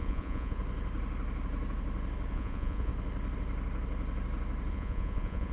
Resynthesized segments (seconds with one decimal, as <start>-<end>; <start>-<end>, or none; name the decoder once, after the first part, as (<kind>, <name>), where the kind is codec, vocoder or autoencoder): 0.0-0.6 (vocoder, Vocos); 2.3-2.9; 4.7-5.5

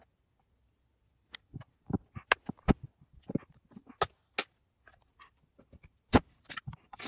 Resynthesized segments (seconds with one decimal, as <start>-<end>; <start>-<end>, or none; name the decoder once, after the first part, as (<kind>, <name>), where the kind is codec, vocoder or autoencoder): none

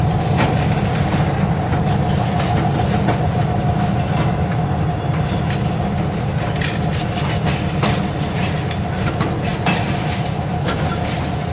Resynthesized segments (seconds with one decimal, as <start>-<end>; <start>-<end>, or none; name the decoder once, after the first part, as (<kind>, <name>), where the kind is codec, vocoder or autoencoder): none

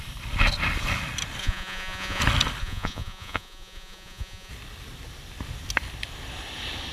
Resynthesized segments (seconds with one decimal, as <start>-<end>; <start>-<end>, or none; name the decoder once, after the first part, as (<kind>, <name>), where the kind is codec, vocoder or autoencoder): 1.4-2.2 (vocoder, Vocos); 2.6-4.5

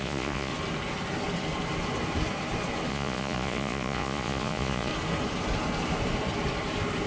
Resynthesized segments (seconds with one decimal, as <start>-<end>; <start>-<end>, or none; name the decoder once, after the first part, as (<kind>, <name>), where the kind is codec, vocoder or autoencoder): 0.0-0.5 (vocoder, Vocos); 2.9-4.9